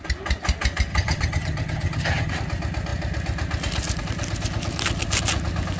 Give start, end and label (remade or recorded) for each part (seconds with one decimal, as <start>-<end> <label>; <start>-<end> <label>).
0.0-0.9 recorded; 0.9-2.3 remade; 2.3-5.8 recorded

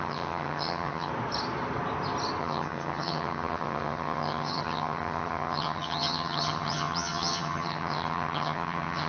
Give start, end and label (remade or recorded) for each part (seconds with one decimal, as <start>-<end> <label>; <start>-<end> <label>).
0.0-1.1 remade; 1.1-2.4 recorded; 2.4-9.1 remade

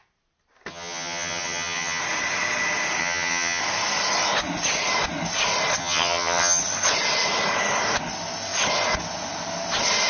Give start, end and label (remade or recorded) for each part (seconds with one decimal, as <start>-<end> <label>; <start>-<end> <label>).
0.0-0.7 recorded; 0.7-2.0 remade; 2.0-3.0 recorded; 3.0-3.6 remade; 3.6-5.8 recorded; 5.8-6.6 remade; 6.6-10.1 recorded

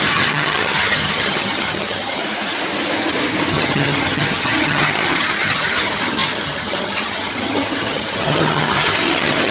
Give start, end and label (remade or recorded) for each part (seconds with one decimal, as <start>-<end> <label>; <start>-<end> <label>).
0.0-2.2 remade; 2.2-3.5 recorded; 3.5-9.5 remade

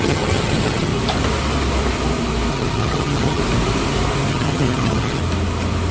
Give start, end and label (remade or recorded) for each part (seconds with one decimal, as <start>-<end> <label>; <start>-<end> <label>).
0.0-0.9 remade; 0.9-2.5 recorded; 2.5-3.4 remade; 3.4-4.3 recorded; 4.3-5.2 remade; 5.2-5.9 recorded

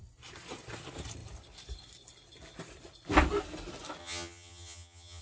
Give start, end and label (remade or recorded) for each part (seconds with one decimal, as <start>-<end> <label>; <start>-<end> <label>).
0.0-4.0 recorded; 4.0-5.2 remade